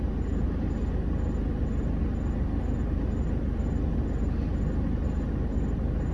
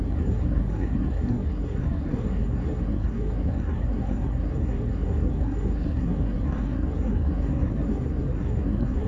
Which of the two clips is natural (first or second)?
first